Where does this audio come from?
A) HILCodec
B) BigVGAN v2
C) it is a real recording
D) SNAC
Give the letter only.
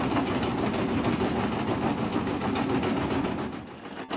C